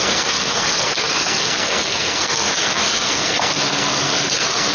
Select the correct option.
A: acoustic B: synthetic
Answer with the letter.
B